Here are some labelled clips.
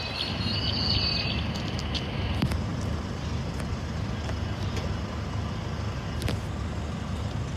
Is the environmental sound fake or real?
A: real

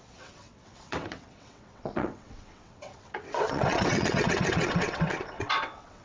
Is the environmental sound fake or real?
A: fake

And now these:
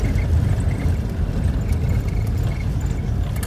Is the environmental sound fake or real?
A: real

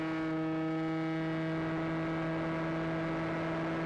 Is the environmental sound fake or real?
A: real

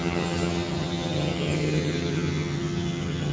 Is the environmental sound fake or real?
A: fake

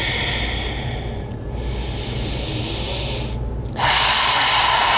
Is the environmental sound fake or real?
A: real